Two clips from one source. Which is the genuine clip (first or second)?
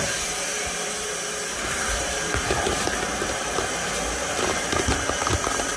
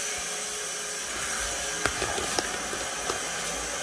second